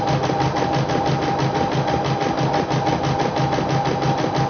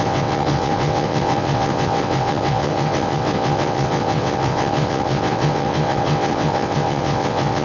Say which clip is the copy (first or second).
second